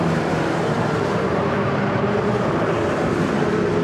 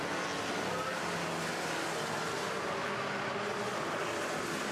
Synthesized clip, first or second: first